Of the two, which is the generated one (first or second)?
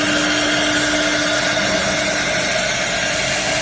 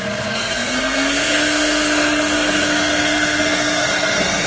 second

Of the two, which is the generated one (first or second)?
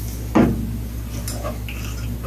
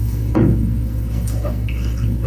second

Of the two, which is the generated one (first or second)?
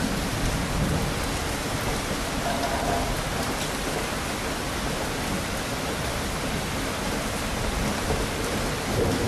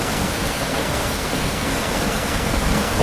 second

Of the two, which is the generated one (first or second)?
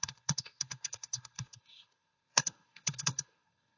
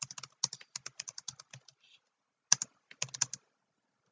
first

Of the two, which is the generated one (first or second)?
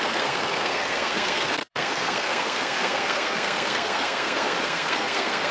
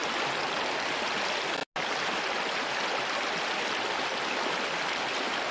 first